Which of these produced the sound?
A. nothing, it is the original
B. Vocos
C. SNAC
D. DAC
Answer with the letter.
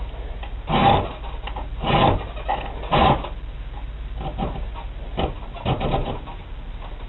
A